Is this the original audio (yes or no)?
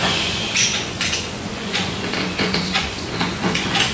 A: no